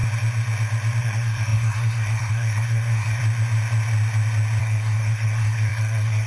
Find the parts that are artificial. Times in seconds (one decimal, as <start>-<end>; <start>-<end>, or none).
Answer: 1.0-3.2; 4.6-6.3